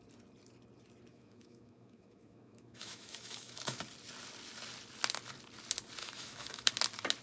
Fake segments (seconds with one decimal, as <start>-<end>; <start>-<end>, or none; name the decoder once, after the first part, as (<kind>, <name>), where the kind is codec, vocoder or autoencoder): 1.1-3.8 (autoencoder, DAC-VAE); 6.0-6.7